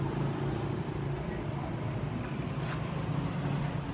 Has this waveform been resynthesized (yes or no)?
no